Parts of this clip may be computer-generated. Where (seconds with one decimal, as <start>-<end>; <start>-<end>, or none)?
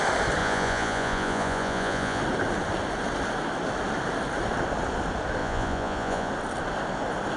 0.4-2.2; 5.4-6.3